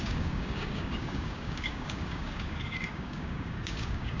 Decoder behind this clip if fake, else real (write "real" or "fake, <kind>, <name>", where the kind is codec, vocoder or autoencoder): fake, codec, DAC